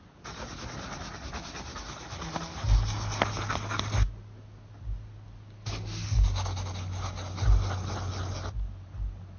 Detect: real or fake real